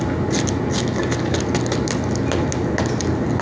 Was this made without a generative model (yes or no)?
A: yes